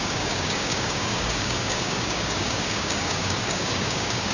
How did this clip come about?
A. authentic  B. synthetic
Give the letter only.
B